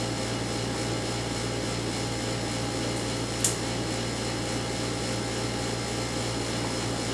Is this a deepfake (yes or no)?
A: no